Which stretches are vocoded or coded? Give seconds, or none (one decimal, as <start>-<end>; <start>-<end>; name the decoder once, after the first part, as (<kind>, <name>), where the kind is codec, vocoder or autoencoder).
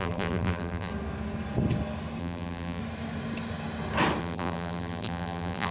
0.0-0.9 (vocoder, BigVGAN v2); 2.2-2.8; 4.2-5.7